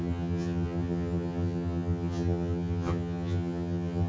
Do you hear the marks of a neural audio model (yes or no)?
yes